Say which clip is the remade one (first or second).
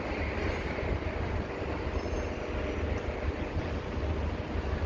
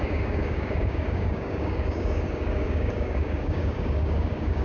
second